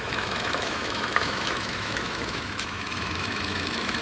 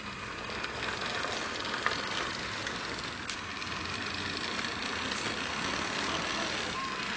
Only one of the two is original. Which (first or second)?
second